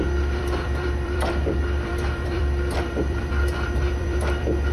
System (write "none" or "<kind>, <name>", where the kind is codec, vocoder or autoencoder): vocoder, BigVGAN v2